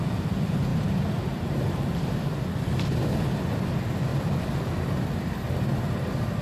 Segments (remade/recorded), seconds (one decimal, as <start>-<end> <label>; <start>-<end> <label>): 0.0-0.7 recorded; 0.7-2.4 remade; 2.4-4.1 recorded; 4.1-4.7 remade; 4.7-6.4 recorded